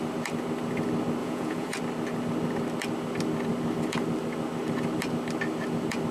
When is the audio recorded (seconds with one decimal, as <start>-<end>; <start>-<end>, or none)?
0.0-1.2; 1.8-6.1